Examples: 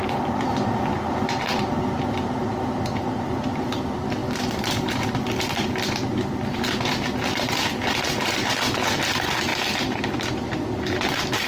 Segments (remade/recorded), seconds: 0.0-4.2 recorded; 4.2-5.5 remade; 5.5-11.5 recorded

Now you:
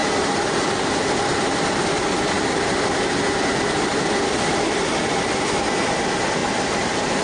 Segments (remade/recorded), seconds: 0.0-0.6 remade; 0.6-6.4 recorded; 6.4-7.2 remade

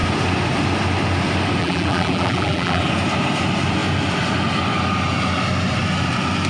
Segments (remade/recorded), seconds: 0.0-1.6 recorded; 1.6-2.8 remade; 2.8-6.5 recorded

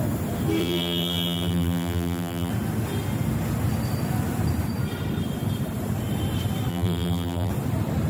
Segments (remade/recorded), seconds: 0.0-0.6 recorded; 0.6-2.5 remade; 2.5-6.7 recorded; 6.7-7.5 remade; 7.5-8.1 recorded

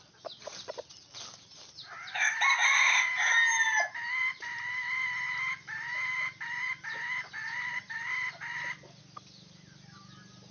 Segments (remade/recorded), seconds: 0.0-7.4 recorded; 7.4-9.0 remade; 9.0-10.5 recorded

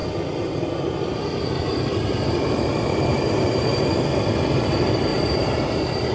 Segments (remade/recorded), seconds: 0.0-1.9 recorded; 1.9-3.9 remade; 3.9-5.1 recorded; 5.1-6.1 remade

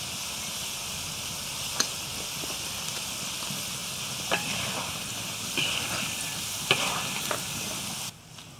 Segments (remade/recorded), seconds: 0.0-2.1 recorded; 2.1-2.9 remade; 2.9-3.8 recorded; 3.8-7.9 remade; 7.9-8.6 recorded

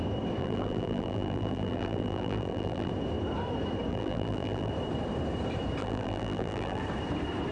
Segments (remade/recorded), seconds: 0.0-0.4 recorded; 0.4-2.9 remade; 2.9-3.9 recorded; 3.9-4.7 remade; 4.7-5.8 recorded; 5.8-6.8 remade; 6.8-7.5 recorded